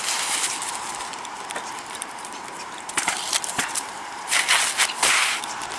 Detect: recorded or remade remade